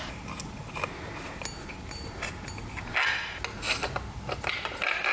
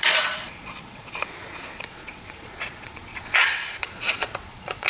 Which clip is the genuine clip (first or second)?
first